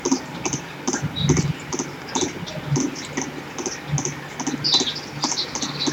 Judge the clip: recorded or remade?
recorded